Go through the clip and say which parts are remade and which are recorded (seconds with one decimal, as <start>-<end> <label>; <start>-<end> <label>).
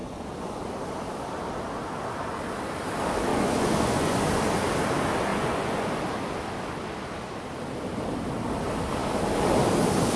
0.0-0.6 remade; 0.6-3.3 recorded; 3.3-4.2 remade; 4.2-5.3 recorded; 5.3-5.9 remade; 5.9-10.2 recorded